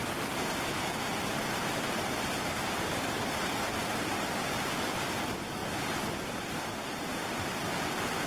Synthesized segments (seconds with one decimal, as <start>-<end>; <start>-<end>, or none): none